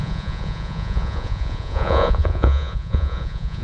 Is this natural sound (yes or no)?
no